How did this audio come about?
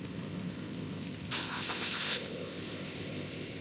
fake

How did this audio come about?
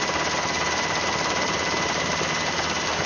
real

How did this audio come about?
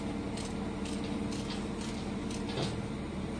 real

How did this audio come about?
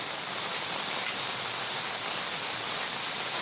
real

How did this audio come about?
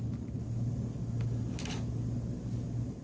real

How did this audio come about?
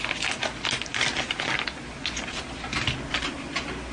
real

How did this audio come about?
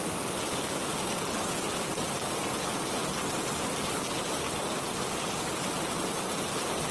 real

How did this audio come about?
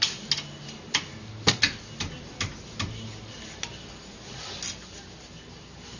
real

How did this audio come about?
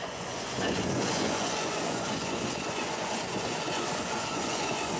fake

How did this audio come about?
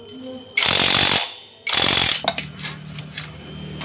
real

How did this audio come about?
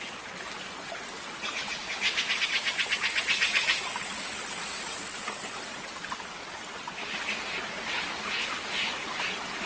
real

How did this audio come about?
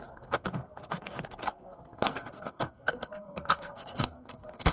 fake